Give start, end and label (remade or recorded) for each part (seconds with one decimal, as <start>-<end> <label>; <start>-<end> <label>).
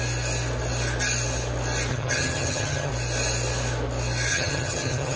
0.0-1.9 recorded; 1.9-2.9 remade; 2.9-4.3 recorded; 4.3-5.2 remade